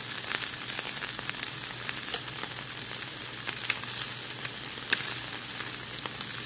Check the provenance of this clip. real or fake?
real